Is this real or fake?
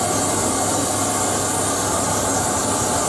real